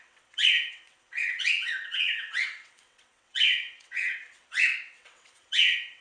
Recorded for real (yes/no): no